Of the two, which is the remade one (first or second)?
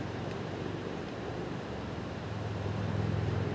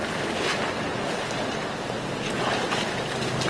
first